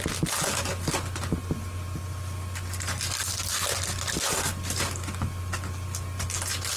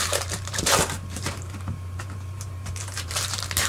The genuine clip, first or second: first